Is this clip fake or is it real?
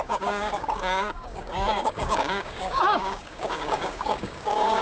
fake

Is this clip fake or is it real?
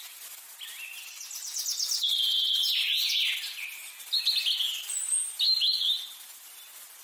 real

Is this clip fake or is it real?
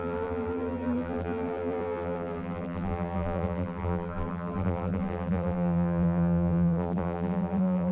fake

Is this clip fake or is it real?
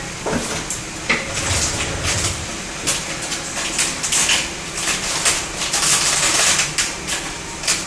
real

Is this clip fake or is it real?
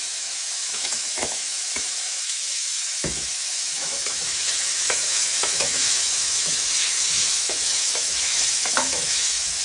fake